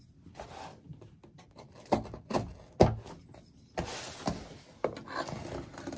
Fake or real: real